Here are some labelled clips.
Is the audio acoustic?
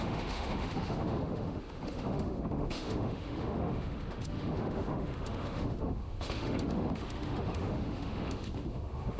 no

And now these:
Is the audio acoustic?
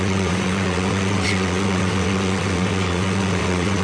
no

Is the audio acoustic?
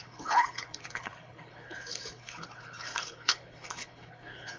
no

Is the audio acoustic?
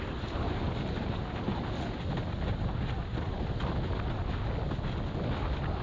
yes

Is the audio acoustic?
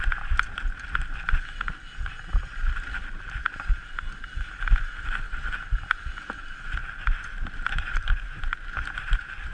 yes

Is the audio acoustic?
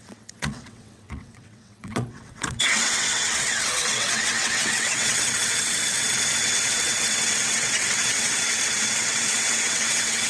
no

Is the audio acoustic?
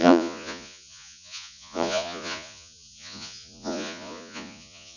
no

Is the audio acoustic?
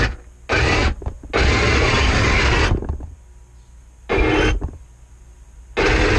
yes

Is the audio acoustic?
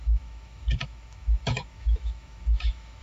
no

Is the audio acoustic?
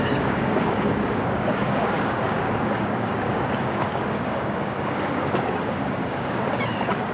no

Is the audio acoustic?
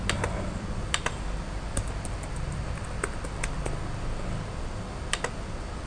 yes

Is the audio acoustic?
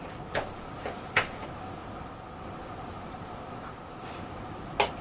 yes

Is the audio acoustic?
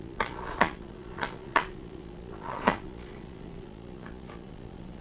no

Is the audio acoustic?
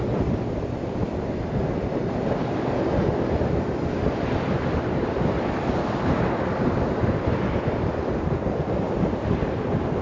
no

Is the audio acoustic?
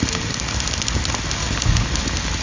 yes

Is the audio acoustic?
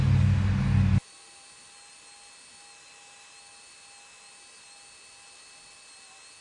yes